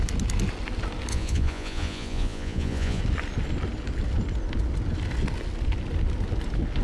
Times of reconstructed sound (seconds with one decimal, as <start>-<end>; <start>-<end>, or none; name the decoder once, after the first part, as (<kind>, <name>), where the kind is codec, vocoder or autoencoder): 1.1-3.0 (vocoder, Vocos)